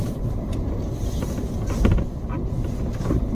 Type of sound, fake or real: fake